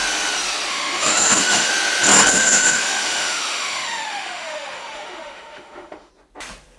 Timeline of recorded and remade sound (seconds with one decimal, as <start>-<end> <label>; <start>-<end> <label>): 0.0-0.7 recorded; 0.7-1.7 remade; 1.7-2.3 recorded; 2.3-6.1 remade; 6.1-6.8 recorded